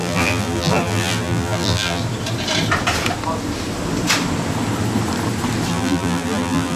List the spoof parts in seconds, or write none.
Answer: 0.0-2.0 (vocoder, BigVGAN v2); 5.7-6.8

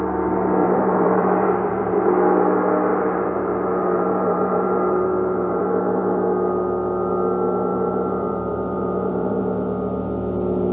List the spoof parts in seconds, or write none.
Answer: 0.6-2.1 (vocoder, BigVGAN v2); 2.9-5.6; 7.7-9.4

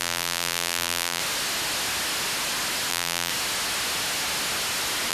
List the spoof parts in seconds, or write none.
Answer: 0.0-1.2 (vocoder, BigVGAN v2); 2.9-3.3

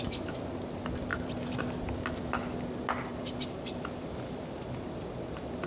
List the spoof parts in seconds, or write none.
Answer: 1.1-1.6 (vocoder, BigVGAN v2); 3.1-3.7